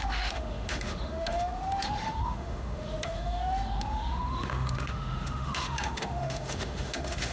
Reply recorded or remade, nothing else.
remade